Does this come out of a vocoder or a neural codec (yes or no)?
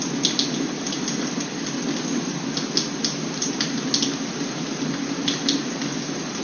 no